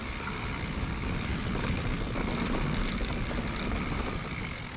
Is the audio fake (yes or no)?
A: no